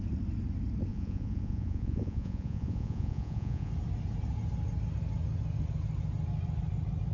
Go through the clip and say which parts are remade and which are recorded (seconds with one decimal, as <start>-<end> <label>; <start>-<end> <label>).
0.0-0.9 recorded; 0.9-3.7 remade; 3.7-7.1 recorded